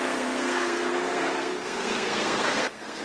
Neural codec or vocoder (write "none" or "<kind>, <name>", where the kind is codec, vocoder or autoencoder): codec, SNAC